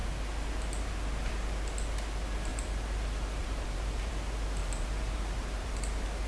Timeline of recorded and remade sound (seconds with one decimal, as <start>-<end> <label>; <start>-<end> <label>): 0.0-2.5 recorded; 2.5-4.1 remade; 4.1-4.6 recorded; 4.6-5.8 remade; 5.8-6.3 recorded